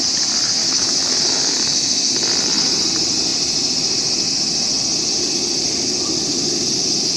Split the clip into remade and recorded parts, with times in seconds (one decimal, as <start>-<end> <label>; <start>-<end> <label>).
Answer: 0.0-0.6 recorded; 0.6-2.1 remade; 2.1-7.2 recorded